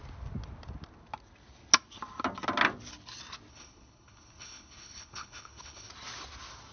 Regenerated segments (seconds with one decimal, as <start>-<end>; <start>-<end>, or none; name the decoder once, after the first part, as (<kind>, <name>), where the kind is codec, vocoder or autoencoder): 3.5-5.9 (codec, HILCodec)